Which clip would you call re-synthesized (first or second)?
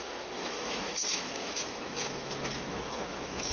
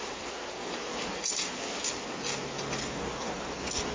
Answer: first